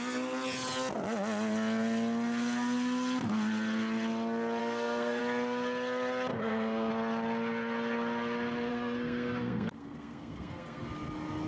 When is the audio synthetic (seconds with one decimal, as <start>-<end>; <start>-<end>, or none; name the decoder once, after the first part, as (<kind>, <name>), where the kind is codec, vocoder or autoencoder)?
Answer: 4.6-5.2 (codec, SNAC); 6.3-6.9; 8.7-10.8